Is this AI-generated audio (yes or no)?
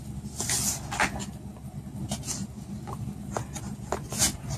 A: no